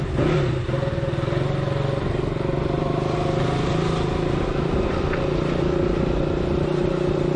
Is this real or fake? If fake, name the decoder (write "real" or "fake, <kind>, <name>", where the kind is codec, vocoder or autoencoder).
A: real